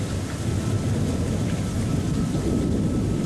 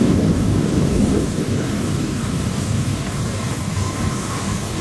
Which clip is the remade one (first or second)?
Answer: second